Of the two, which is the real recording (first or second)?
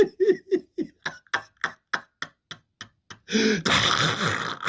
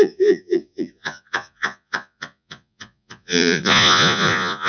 first